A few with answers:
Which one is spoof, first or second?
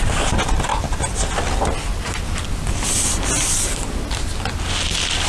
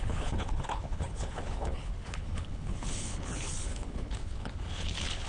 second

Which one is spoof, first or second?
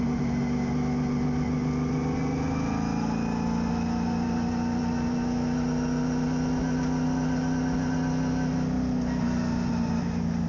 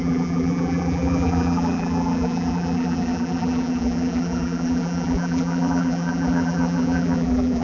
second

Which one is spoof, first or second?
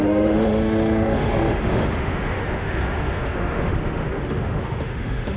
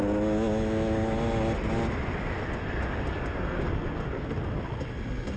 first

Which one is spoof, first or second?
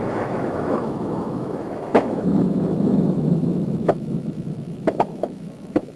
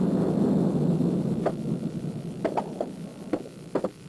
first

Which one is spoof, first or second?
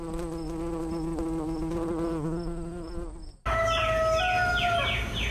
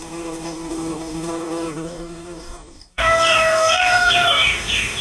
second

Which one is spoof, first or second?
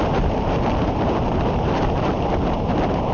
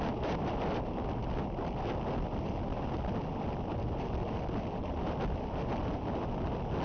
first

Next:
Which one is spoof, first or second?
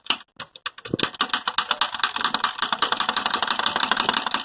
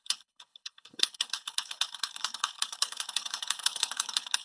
second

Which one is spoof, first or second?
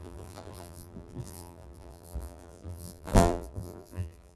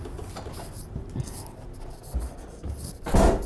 first